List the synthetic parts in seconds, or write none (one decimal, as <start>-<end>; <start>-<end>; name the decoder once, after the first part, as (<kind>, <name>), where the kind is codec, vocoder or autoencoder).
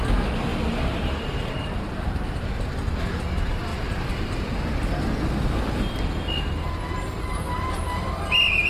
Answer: 0.5-2.7 (vocoder, BigVGAN v2); 3.7-5.0